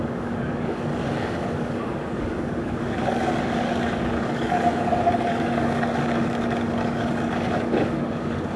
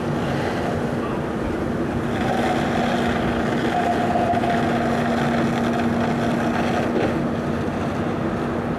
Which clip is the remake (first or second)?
first